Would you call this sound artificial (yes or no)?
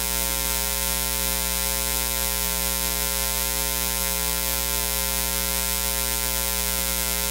no